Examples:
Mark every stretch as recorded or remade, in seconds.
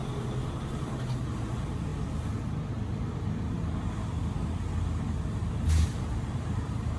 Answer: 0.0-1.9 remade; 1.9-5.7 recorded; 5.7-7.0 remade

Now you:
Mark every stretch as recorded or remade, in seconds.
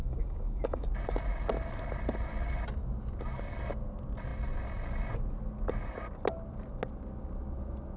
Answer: 0.0-0.9 remade; 0.9-8.0 recorded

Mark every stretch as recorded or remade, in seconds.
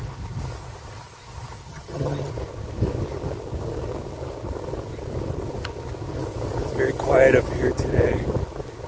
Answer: 0.0-1.7 recorded; 1.7-2.3 remade; 2.3-8.9 recorded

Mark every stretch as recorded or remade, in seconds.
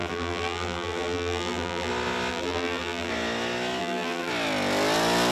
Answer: 0.0-1.9 remade; 1.9-2.3 recorded; 2.3-3.1 remade; 3.1-3.8 recorded; 3.8-4.3 remade; 4.3-5.3 recorded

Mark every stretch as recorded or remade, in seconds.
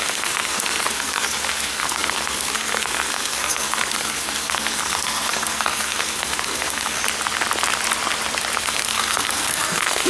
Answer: 0.0-7.0 remade; 7.0-8.6 recorded; 8.6-10.1 remade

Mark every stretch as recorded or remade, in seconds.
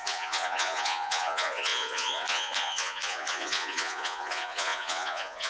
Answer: 0.0-5.5 remade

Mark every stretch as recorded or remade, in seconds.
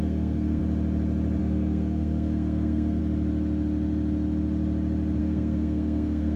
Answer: 0.0-0.6 remade; 0.6-1.4 recorded; 1.4-3.0 remade; 3.0-5.2 recorded; 5.2-6.4 remade